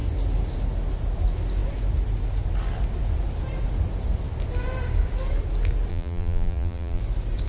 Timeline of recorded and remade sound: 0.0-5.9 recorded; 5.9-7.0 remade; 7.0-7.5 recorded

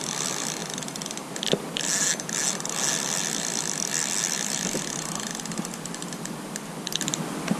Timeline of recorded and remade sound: 0.0-7.6 recorded

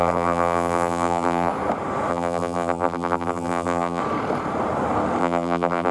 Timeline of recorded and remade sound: 0.0-1.5 remade; 1.5-2.1 recorded; 2.1-4.0 remade; 4.0-5.2 recorded; 5.2-5.9 remade

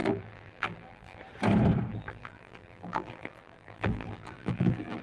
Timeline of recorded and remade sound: 0.0-1.2 remade; 1.2-1.9 recorded; 1.9-5.0 remade

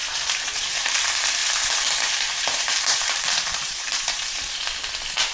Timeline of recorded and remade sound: 0.0-0.9 remade; 0.9-1.4 recorded; 1.4-4.6 remade; 4.6-5.3 recorded